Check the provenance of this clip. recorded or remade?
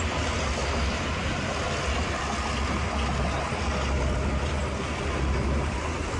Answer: recorded